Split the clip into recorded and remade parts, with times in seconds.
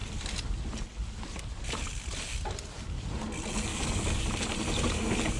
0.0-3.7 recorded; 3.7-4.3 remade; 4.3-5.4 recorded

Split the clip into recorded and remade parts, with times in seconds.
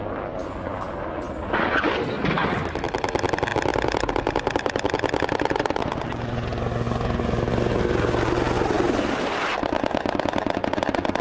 0.0-11.2 recorded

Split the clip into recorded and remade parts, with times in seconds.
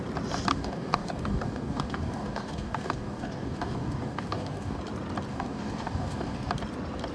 0.0-0.5 recorded; 0.5-4.8 remade; 4.8-5.3 recorded; 5.3-6.5 remade; 6.5-7.1 recorded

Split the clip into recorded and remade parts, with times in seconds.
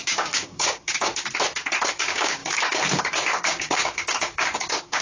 0.0-1.1 remade; 1.1-2.0 recorded; 2.0-5.0 remade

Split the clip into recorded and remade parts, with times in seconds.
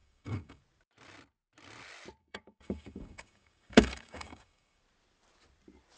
0.0-0.6 remade; 0.6-2.2 recorded; 2.2-4.8 remade; 4.8-6.0 recorded